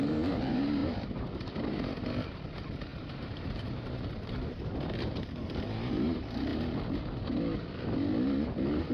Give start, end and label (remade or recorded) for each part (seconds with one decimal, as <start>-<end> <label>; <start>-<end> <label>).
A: 0.0-6.5 remade; 6.5-8.9 recorded